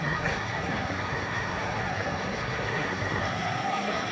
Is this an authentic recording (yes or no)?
no